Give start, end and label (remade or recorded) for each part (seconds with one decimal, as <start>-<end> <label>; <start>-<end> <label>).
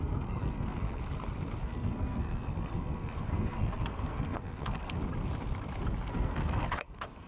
0.0-1.0 remade; 1.0-1.6 recorded; 1.6-5.0 remade; 5.0-6.1 recorded; 6.1-7.3 remade